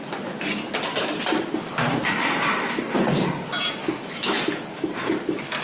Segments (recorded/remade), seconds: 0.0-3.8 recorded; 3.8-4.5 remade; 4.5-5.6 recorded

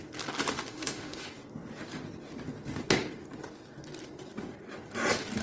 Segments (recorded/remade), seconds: 0.0-0.6 recorded; 0.6-1.2 remade; 1.2-5.4 recorded

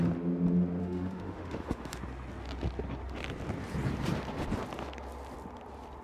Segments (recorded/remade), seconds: 0.0-0.8 recorded; 0.8-2.0 remade; 2.0-6.0 recorded

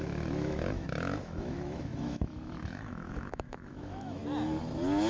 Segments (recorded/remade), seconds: 0.0-4.2 remade; 4.2-5.1 recorded

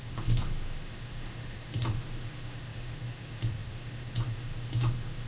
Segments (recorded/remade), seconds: 0.0-5.3 remade

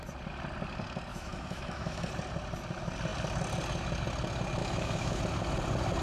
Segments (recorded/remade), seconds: 0.0-1.1 recorded; 1.1-2.1 remade; 2.1-4.6 recorded; 4.6-5.2 remade; 5.2-6.0 recorded